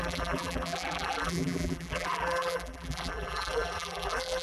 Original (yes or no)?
no